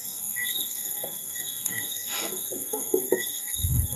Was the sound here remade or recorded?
remade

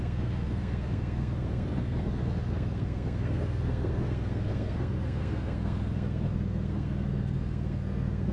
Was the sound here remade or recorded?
remade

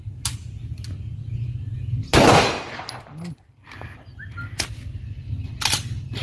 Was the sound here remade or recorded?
recorded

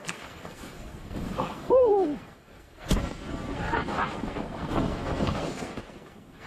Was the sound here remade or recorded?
remade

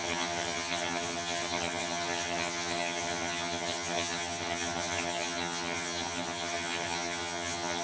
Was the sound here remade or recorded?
remade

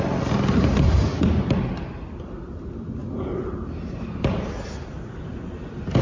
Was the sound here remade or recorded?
recorded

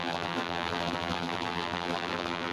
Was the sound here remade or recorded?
remade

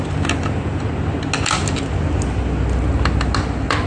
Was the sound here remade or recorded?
recorded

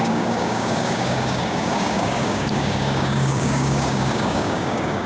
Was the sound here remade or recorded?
remade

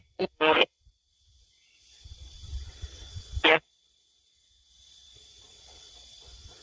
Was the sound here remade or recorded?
remade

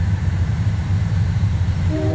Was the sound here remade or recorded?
remade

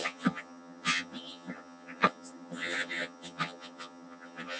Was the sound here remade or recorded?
remade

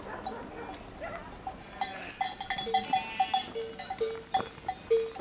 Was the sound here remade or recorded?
recorded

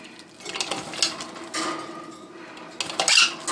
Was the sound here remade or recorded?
recorded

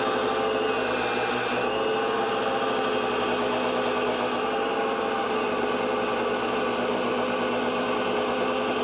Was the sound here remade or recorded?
recorded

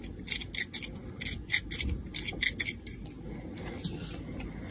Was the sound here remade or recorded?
recorded